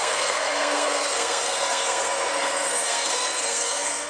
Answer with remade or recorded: remade